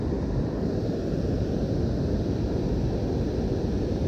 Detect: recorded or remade recorded